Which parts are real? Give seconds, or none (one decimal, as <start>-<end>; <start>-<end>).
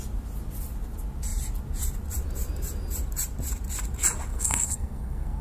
0.0-4.3